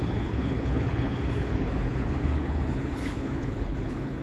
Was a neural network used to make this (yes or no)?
yes